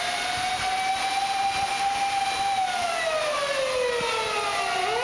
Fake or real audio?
real